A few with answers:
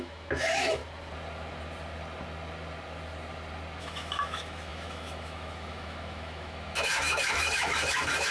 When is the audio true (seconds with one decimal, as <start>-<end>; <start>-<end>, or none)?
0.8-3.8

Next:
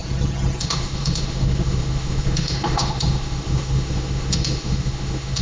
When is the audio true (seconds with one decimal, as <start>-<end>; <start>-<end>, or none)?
0.0-0.6

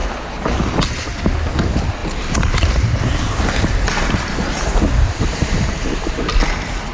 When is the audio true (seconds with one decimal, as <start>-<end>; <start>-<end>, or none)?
0.6-2.0; 6.1-6.9

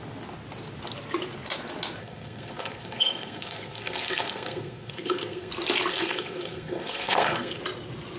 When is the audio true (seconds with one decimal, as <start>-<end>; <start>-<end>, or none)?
0.0-2.0; 5.5-5.9; 7.6-8.2